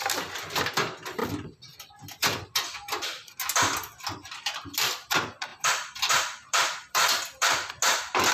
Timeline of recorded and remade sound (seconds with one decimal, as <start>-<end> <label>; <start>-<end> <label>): 0.0-1.2 recorded; 1.2-1.9 remade; 1.9-4.2 recorded; 4.2-4.9 remade; 4.9-5.5 recorded; 5.5-7.7 remade; 7.7-8.3 recorded

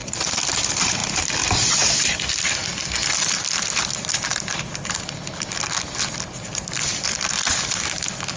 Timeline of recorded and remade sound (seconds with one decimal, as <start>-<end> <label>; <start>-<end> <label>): 0.0-1.0 remade; 1.0-2.0 recorded; 2.0-8.4 remade

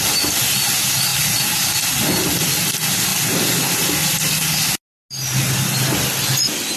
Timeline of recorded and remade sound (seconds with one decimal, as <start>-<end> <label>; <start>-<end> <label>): 0.0-6.8 recorded

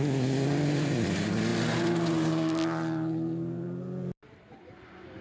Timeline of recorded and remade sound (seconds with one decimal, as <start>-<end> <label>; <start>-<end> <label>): 0.0-5.2 recorded

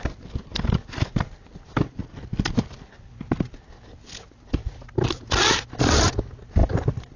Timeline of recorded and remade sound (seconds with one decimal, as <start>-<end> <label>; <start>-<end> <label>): 0.0-4.6 recorded; 4.6-5.3 remade; 5.3-6.6 recorded; 6.6-7.2 remade

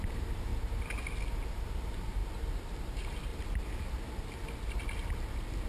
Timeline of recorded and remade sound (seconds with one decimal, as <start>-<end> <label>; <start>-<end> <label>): 0.0-0.5 remade; 0.5-1.3 recorded; 1.3-2.2 remade; 2.2-2.8 recorded; 2.8-3.3 remade; 3.3-5.7 recorded

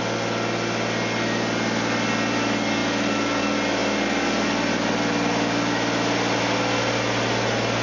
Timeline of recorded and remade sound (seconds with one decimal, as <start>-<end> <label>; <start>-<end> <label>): 0.0-2.8 recorded; 2.8-3.4 remade; 3.4-7.8 recorded

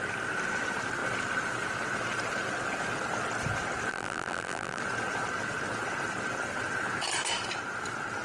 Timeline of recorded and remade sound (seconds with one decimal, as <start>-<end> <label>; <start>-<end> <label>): 0.0-3.9 recorded; 3.9-4.8 remade; 4.8-8.2 recorded